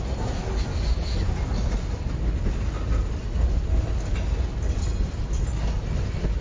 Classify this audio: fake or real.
real